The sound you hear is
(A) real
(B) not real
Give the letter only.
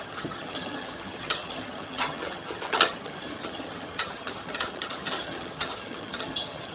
B